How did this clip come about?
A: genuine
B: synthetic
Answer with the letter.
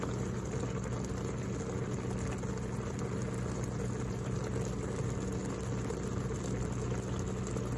A